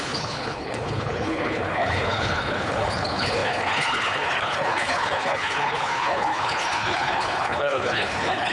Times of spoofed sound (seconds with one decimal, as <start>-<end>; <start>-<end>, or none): 0.0-8.5